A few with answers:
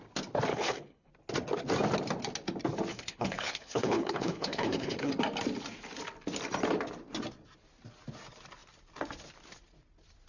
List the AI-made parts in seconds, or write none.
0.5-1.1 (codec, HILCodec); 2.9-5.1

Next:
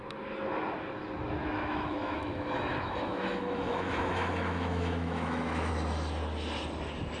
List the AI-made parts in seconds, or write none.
1.4-5.7 (autoencoder, DAC-VAE)